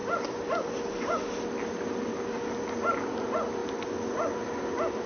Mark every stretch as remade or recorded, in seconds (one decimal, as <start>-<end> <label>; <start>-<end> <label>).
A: 0.0-5.1 recorded